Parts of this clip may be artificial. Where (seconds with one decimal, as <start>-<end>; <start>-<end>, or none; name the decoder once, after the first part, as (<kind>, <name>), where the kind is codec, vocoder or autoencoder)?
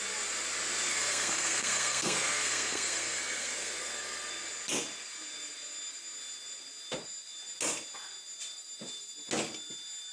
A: 0.9-4.3 (codec, SNAC)